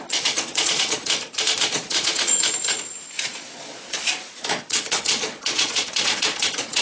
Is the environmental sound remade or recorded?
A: remade